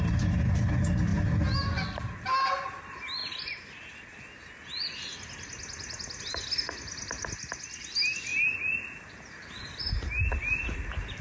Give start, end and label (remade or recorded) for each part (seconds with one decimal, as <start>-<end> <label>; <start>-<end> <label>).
0.0-11.2 recorded